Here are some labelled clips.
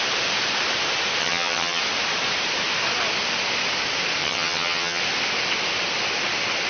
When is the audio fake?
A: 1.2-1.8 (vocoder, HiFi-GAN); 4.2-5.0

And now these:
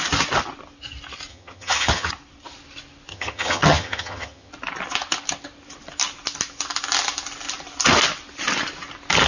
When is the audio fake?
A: 1.3-2.1 (vocoder, HiFi-GAN); 3.1-4.5

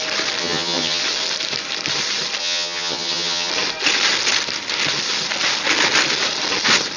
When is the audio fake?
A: 0.4-1.0 (vocoder, HiFi-GAN); 2.4-3.5

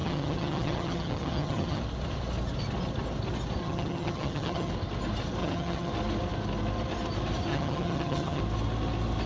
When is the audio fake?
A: 0.0-1.8 (vocoder, HiFi-GAN); 3.6-4.7; 5.4-5.9; 7.5-8.4

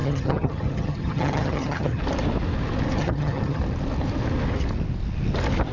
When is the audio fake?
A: 0.0-2.0 (vocoder, HiFi-GAN); 3.0-3.6